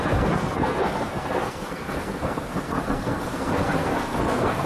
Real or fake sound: fake